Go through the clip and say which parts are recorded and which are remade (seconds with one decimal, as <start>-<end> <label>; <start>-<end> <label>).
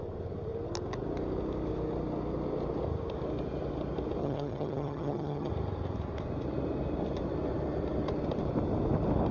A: 0.0-4.2 recorded; 4.2-5.5 remade; 5.5-9.3 recorded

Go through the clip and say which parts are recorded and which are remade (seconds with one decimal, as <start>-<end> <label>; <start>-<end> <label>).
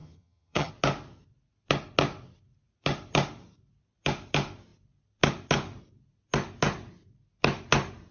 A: 0.0-0.7 remade; 0.7-8.1 recorded